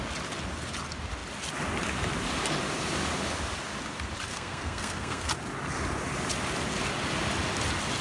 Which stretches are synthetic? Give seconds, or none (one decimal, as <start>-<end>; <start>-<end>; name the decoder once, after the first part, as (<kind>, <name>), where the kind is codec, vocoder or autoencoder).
4.3-5.3 (codec, SNAC)